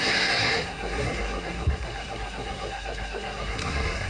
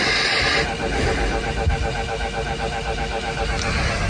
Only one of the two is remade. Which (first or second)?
first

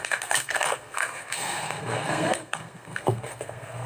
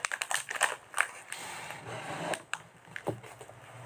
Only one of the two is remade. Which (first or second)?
first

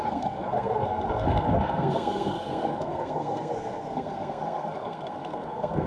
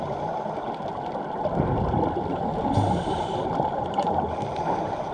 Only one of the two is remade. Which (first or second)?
first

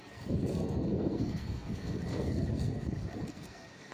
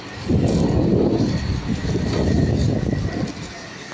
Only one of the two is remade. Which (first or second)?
first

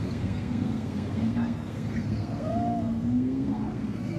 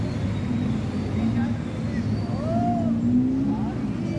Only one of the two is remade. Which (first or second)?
first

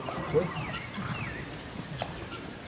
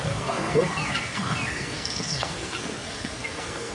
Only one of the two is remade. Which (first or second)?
second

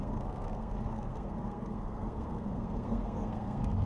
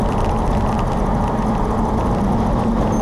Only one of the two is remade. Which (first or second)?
first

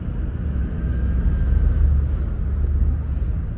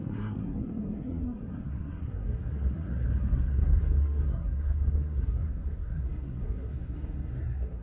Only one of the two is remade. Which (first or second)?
second